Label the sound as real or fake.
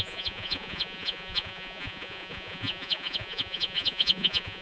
fake